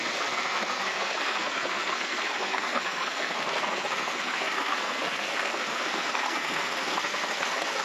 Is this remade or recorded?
remade